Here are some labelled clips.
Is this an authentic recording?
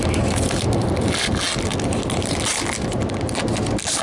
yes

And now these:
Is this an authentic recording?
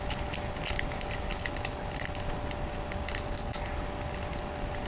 yes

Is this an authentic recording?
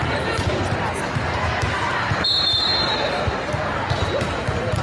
no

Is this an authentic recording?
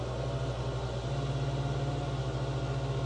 yes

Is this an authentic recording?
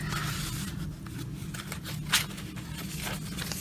yes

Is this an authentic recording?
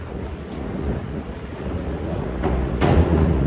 no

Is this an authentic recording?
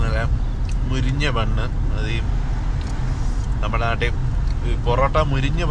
yes